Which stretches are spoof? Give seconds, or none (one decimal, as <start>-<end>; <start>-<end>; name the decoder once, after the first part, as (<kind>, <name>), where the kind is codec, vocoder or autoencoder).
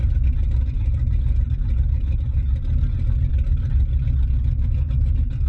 none